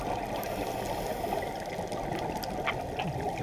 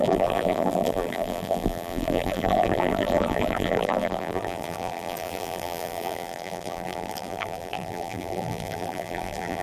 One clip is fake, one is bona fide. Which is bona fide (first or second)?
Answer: first